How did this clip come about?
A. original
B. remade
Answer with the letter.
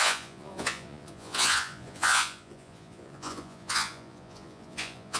B